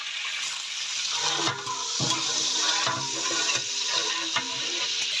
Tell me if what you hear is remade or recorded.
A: recorded